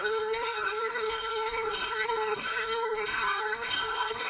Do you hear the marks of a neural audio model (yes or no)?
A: yes